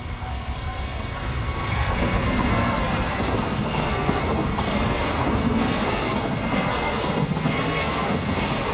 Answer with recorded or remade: remade